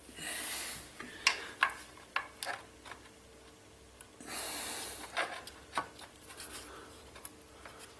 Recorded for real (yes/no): yes